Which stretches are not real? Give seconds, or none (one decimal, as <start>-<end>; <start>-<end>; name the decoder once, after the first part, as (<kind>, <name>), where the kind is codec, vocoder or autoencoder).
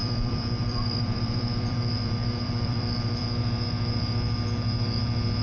0.0-3.2 (vocoder, BigVGAN v2)